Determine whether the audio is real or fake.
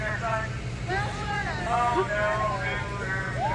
real